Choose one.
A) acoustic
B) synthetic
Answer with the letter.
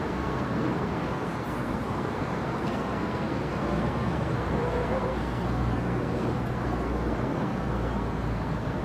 B